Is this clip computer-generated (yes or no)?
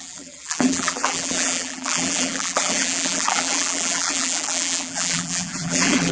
yes